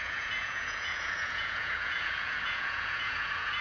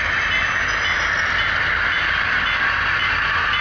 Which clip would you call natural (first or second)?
second